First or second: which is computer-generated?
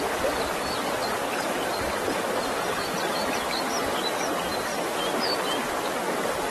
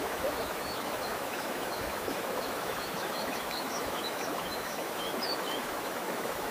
second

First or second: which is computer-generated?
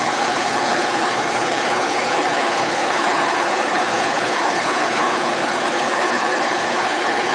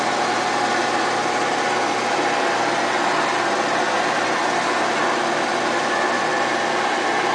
first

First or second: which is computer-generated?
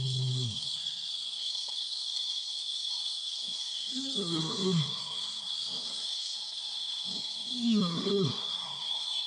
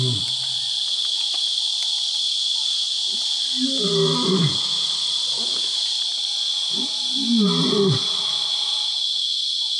first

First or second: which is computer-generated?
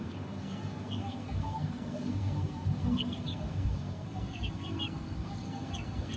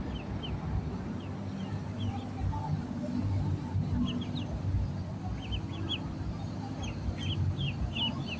first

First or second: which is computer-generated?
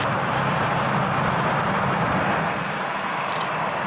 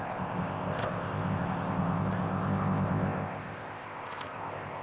second